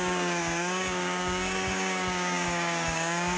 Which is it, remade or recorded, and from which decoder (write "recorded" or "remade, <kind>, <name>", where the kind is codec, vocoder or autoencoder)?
remade, codec, DAC